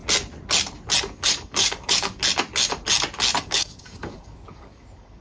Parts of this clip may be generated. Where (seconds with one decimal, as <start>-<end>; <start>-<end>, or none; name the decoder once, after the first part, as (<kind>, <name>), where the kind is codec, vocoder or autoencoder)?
1.0-2.2 (codec, DAC); 3.4-5.2